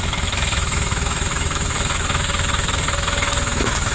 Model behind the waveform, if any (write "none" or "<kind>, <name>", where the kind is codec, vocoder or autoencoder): autoencoder, DAC-VAE